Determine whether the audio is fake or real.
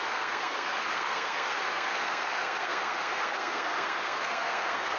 fake